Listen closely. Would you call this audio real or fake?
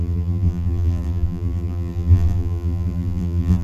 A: fake